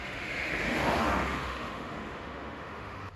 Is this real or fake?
fake